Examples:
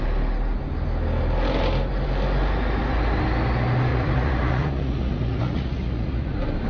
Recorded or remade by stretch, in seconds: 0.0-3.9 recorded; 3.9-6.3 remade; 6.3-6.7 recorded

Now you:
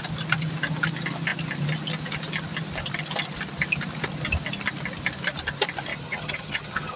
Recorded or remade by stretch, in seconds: 0.0-5.9 recorded; 5.9-7.0 remade

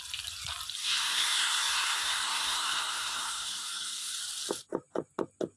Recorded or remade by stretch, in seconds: 0.0-0.8 recorded; 0.8-4.2 remade; 4.2-5.6 recorded

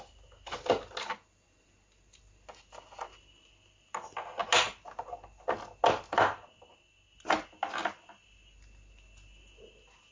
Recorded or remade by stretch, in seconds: 0.0-10.1 recorded

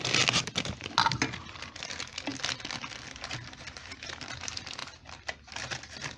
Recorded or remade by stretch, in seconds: 0.0-6.2 recorded